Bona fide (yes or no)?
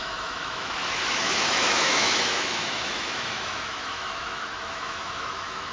no